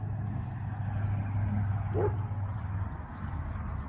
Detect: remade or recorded recorded